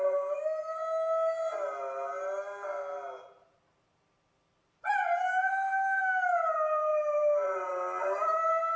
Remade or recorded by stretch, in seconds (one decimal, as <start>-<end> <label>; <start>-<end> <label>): 0.0-0.8 remade; 0.8-4.5 recorded; 4.5-8.8 remade